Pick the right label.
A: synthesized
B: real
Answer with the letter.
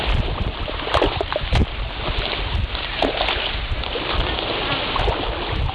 B